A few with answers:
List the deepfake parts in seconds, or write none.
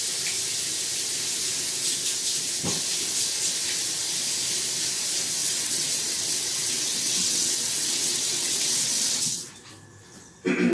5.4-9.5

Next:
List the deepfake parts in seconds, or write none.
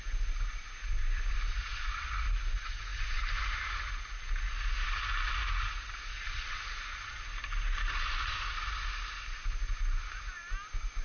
none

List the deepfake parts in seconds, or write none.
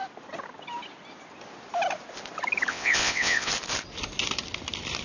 2.7-3.5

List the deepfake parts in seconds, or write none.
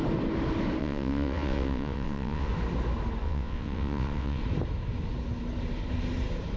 0.8-2.5; 3.2-4.4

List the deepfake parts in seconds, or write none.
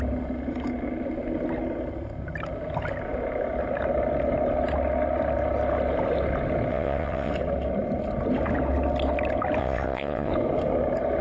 6.7-7.3; 9.6-10.3